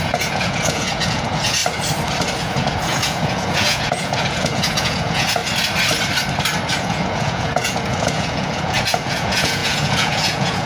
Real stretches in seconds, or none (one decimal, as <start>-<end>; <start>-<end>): 1.6-2.4; 5.4-6.8